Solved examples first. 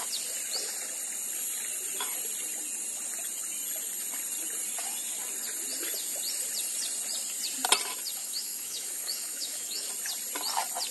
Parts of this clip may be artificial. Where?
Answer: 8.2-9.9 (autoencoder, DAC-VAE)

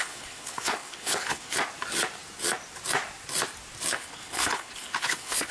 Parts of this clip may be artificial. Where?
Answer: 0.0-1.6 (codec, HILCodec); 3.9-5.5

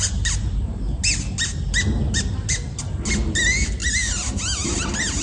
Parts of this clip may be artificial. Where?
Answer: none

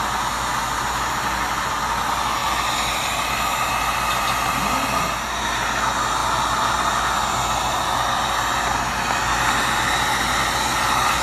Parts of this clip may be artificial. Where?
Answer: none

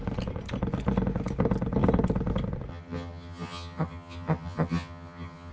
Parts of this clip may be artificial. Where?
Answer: 2.7-5.5 (vocoder, HiFi-GAN)

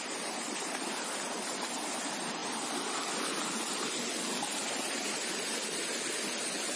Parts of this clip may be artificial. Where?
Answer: none